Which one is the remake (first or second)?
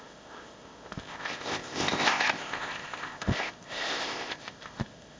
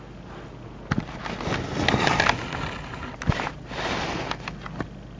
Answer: first